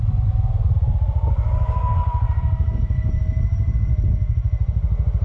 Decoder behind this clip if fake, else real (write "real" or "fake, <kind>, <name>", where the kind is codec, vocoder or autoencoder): real